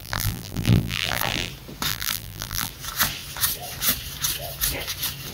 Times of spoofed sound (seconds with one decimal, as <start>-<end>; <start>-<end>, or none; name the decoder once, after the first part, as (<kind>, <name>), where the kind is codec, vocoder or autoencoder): 0.0-1.5 (vocoder, BigVGAN v2); 1.9-2.7